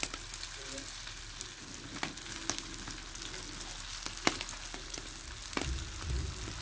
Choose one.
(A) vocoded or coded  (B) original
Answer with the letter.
B